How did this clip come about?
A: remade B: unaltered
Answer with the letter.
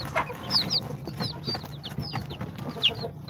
B